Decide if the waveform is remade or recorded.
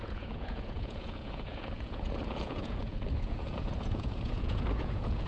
remade